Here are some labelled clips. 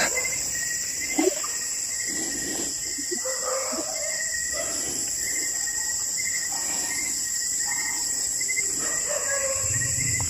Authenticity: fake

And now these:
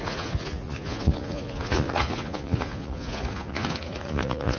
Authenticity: fake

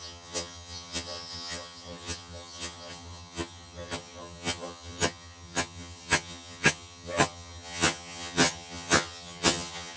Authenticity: fake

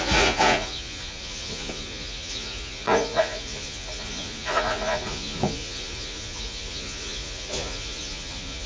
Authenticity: fake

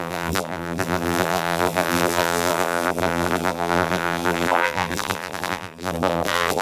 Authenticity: fake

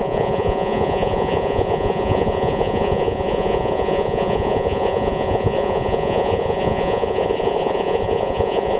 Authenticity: fake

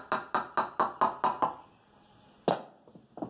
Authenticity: real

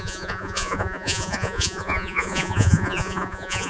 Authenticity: fake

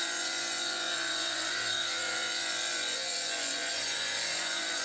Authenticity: fake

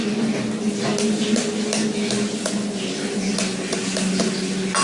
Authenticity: real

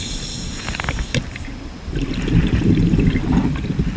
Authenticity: real